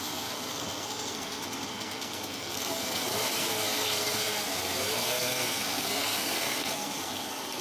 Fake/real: fake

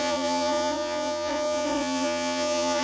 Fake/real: fake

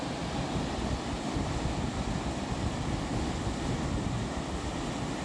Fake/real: real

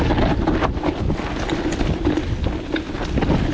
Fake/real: real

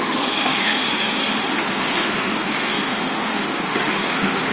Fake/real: fake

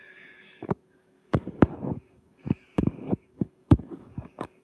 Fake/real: fake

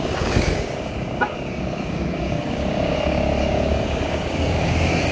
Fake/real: fake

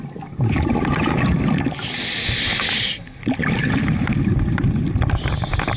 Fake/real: real